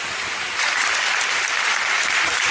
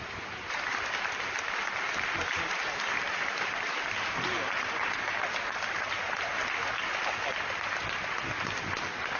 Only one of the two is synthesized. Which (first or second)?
first